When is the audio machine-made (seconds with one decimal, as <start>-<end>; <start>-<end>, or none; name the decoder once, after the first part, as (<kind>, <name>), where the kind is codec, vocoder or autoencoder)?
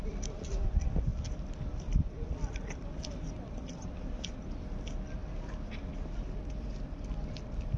none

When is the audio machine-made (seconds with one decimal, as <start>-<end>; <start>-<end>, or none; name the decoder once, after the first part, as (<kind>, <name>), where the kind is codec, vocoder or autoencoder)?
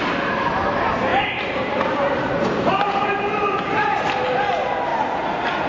1.1-4.5 (vocoder, BigVGAN v2)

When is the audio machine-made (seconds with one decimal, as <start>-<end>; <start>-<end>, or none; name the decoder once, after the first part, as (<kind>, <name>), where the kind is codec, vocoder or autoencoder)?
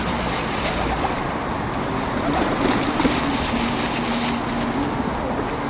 none